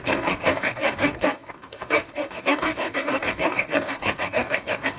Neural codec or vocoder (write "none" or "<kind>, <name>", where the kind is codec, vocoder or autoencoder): codec, DAC